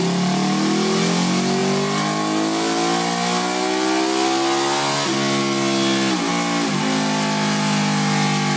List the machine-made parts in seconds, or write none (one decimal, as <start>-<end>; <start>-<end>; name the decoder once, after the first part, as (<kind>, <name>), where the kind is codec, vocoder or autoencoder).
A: none